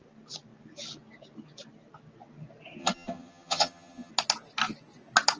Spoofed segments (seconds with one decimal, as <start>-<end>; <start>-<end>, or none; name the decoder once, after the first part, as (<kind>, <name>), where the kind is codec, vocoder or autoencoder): 2.8-4.1 (vocoder, HiFi-GAN)